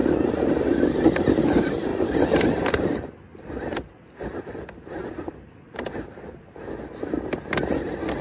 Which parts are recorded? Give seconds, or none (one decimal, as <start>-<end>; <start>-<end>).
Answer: 1.2-8.2